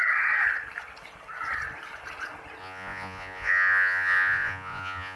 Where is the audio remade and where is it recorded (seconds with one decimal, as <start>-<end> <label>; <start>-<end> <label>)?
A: 0.0-2.6 recorded; 2.6-5.2 remade